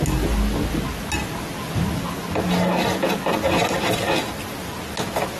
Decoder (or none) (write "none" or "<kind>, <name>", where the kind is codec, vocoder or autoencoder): none